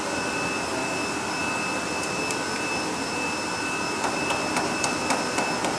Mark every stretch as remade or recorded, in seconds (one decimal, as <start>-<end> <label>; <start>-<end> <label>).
0.0-5.8 recorded